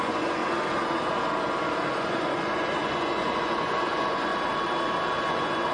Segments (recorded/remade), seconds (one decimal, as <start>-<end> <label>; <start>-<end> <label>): 0.0-0.4 remade; 0.4-1.9 recorded; 1.9-4.3 remade; 4.3-5.3 recorded; 5.3-5.7 remade